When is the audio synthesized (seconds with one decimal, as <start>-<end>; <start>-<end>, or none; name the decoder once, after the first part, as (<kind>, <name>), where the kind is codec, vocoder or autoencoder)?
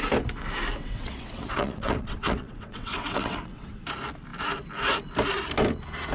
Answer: 0.8-3.8 (vocoder, WaveNeXt)